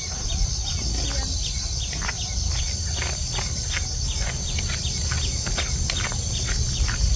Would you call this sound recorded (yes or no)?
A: yes